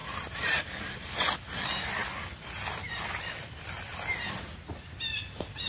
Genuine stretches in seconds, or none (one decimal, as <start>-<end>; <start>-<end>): 0.0-5.7